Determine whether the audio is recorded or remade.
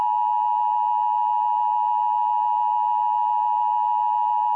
remade